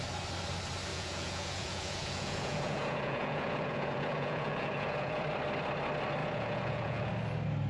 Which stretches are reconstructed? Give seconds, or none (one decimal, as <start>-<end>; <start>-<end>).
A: 0.9-5.2; 6.2-7.1